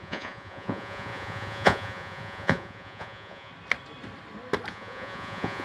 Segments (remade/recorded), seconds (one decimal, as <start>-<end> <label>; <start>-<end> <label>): 0.0-3.5 remade; 3.5-4.7 recorded; 4.7-5.6 remade